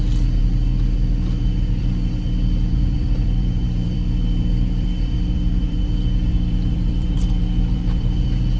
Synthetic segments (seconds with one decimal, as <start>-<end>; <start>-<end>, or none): 0.4-1.9; 2.7-5.8; 6.3-8.6